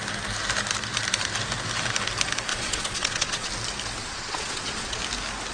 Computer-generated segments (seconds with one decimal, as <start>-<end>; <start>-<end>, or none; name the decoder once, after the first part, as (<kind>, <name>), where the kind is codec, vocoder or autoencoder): 2.5-3.5 (vocoder, Vocos); 4.0-5.0